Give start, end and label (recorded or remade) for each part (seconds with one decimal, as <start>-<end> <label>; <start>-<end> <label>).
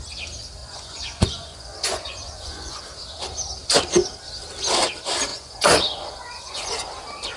0.0-0.6 recorded; 0.6-2.8 remade; 2.8-5.3 recorded; 5.3-6.7 remade; 6.7-7.4 recorded